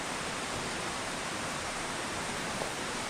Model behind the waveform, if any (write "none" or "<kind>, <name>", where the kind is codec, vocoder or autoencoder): vocoder, BigVGAN v2